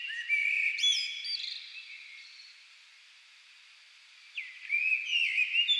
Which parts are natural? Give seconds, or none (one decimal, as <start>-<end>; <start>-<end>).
0.0-5.8